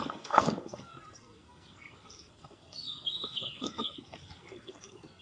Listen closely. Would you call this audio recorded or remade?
remade